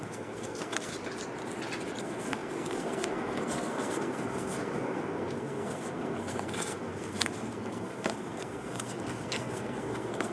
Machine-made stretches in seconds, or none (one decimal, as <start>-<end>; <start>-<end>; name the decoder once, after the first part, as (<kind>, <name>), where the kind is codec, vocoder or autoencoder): 0.0-0.9 (codec, SNAC); 2.0-10.3